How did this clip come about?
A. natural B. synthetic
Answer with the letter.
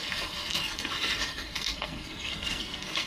B